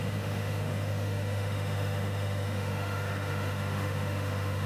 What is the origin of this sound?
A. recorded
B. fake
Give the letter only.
B